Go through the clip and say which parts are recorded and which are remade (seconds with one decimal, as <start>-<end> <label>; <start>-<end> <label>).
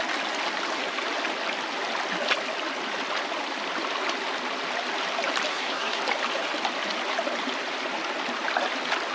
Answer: 0.0-5.5 recorded; 5.5-6.0 remade; 6.0-9.1 recorded